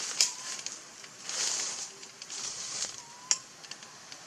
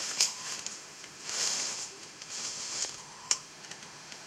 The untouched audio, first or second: first